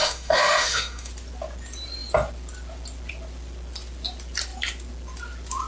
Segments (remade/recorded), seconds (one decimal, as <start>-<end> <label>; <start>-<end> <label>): 0.0-1.1 remade; 1.1-5.7 recorded